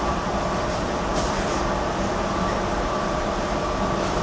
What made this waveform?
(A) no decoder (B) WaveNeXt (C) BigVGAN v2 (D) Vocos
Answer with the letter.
C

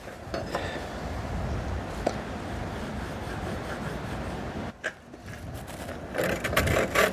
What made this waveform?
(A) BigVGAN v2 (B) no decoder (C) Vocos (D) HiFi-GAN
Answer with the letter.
A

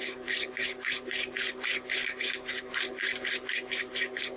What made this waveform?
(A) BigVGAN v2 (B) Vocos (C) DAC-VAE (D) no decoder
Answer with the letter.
D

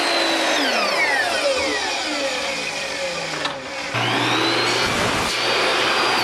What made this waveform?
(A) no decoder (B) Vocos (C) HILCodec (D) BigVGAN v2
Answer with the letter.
A